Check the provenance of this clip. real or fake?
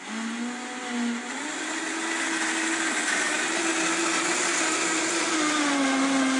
real